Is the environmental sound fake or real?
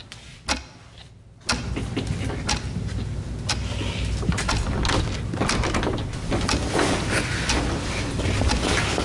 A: real